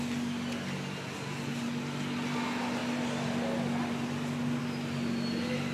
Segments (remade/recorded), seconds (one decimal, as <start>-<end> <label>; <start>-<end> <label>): 0.0-5.7 recorded